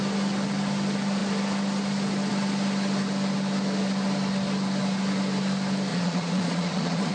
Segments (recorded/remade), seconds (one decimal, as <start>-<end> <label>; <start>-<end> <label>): 0.0-5.9 recorded; 5.9-7.1 remade